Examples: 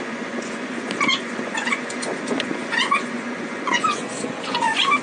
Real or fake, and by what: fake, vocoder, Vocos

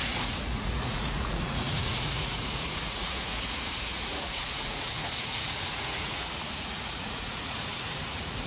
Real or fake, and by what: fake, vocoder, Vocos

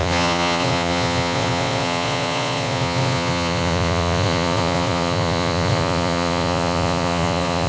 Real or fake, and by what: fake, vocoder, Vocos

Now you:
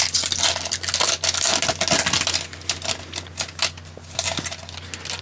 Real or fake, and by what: real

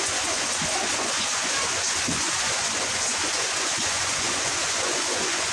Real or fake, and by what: fake, vocoder, Vocos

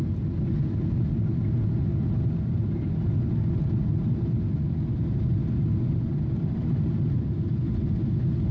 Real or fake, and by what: real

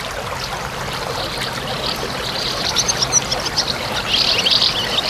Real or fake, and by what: real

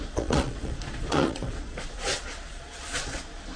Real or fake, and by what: fake, vocoder, Vocos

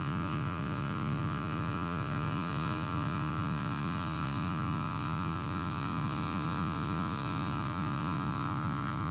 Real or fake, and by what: fake, vocoder, Vocos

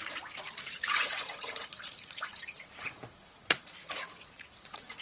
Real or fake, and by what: fake, vocoder, Vocos